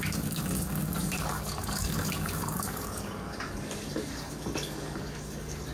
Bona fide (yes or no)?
no